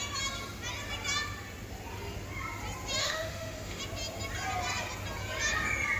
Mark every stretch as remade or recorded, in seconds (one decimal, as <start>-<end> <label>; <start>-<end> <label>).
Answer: 0.0-3.0 recorded; 3.0-3.8 remade; 3.8-6.0 recorded